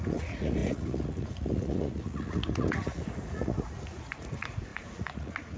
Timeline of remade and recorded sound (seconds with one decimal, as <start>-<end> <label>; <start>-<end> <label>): 0.0-5.6 remade